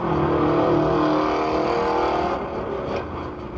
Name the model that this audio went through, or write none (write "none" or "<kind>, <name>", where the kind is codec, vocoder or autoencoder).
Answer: none